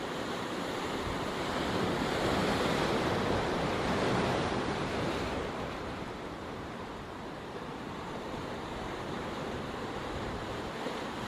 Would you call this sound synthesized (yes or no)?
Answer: yes